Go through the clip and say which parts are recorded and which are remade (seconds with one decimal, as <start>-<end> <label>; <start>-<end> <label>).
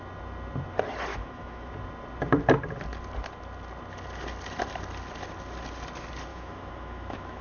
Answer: 0.0-1.1 recorded; 1.1-1.7 remade; 1.7-6.3 recorded; 6.3-7.4 remade